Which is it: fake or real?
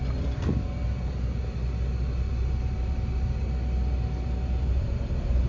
real